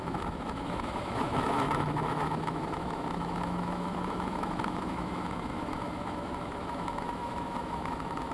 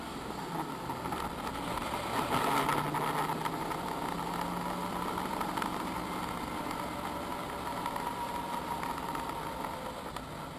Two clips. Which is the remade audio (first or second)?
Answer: first